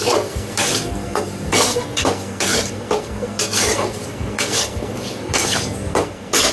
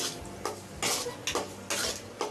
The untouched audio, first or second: second